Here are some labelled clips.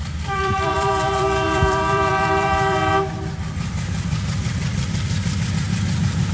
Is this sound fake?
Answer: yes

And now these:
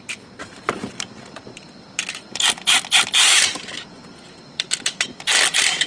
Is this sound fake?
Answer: yes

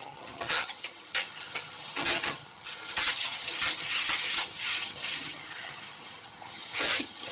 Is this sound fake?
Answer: yes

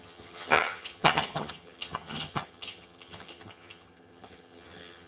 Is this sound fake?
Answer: yes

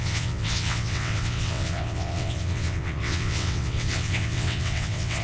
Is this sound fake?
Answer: yes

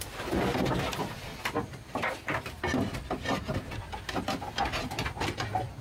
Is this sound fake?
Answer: no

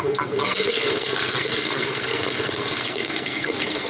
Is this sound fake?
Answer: yes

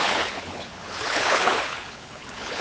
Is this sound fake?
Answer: yes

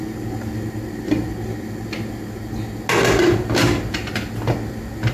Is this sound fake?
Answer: no